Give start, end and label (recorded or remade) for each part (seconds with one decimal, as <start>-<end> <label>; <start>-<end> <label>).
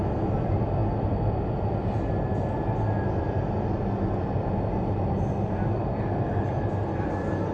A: 0.0-7.5 recorded